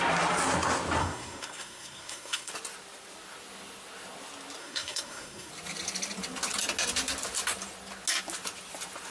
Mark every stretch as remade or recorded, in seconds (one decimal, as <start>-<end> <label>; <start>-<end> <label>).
0.0-1.0 recorded; 1.0-2.5 remade; 2.5-4.6 recorded; 4.6-5.5 remade; 5.5-9.1 recorded